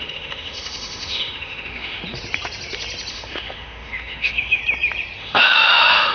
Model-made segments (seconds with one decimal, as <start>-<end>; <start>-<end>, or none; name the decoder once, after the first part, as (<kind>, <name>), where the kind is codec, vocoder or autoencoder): 0.0-2.0 (autoencoder, DAC-VAE); 3.1-4.6; 5.2-6.1